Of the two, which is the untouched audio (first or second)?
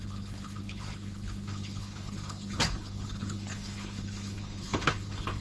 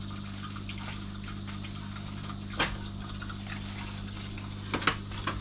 second